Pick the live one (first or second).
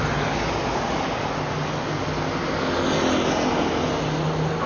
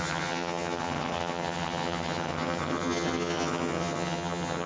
first